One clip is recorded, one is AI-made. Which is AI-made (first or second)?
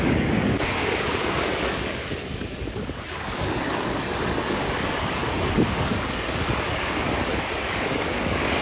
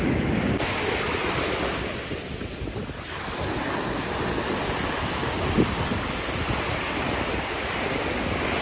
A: first